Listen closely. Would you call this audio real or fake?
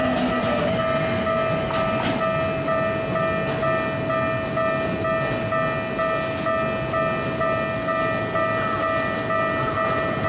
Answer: real